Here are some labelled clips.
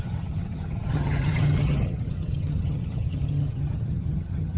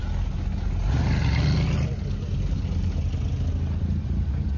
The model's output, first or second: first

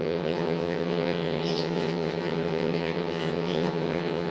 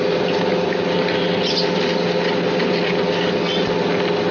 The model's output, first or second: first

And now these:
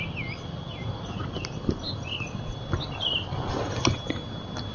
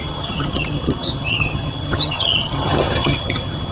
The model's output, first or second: second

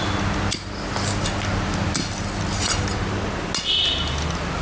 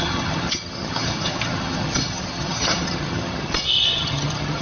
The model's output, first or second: second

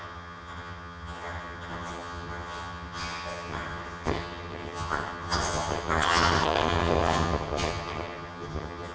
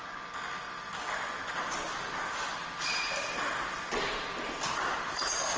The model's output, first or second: first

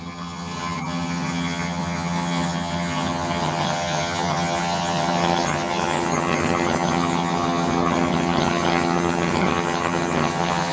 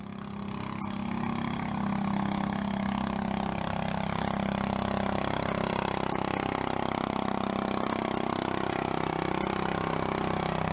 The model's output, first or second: first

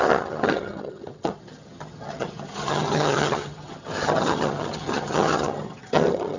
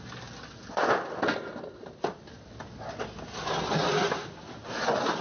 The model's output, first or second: first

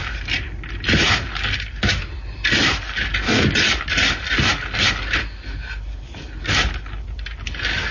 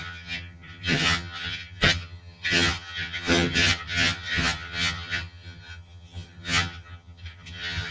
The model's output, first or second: second